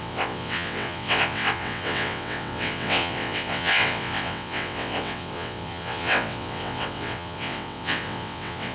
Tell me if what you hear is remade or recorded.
remade